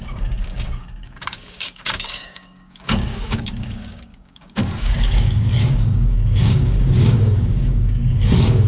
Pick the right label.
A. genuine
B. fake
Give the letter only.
B